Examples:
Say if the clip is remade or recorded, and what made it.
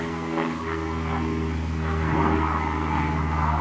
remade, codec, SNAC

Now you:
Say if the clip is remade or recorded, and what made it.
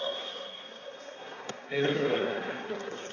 remade, codec, SNAC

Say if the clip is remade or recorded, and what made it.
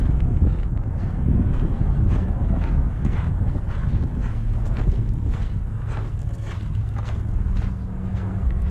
remade, codec, SNAC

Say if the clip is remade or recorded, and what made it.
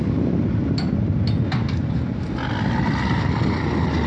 recorded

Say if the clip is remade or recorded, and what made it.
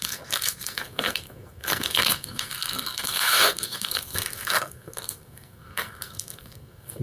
remade, codec, SNAC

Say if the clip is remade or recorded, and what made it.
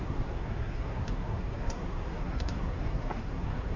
remade, codec, SNAC